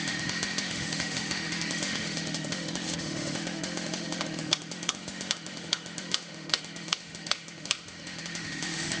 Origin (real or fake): fake